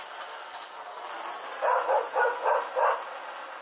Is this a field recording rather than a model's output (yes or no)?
yes